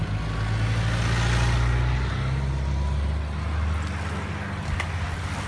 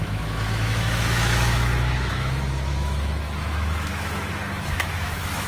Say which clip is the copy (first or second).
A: second